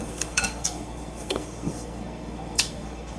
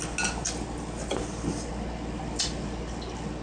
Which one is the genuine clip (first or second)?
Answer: second